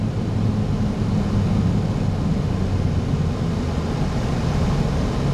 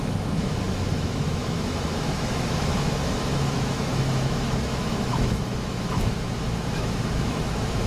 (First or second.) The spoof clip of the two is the second